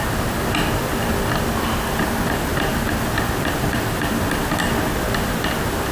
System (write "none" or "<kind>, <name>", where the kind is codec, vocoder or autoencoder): none